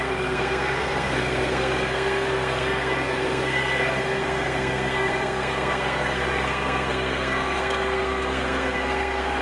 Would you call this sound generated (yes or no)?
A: yes